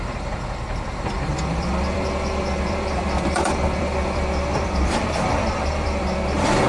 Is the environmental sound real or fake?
fake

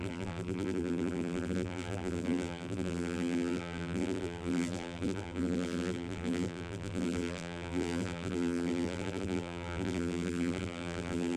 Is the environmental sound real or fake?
fake